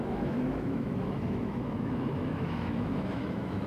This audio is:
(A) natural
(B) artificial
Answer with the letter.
B